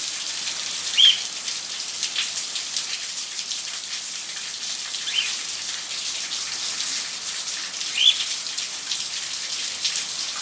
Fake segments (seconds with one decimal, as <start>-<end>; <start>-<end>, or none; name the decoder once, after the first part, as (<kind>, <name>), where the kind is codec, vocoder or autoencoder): 0.0-5.4 (vocoder, BigVGAN v2); 8.2-10.4